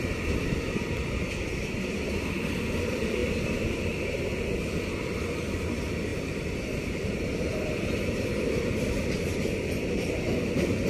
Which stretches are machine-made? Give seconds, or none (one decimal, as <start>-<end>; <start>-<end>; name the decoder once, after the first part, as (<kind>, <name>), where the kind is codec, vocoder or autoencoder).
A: 0.0-1.5 (vocoder, BigVGAN v2); 2.2-3.2; 4.7-6.1; 6.8-10.9